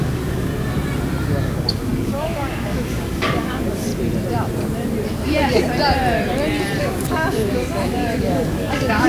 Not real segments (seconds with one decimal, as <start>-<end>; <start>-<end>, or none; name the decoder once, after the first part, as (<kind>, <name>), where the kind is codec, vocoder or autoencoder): 0.0-0.5 (codec, DAC); 1.4-3.9; 6.8-9.1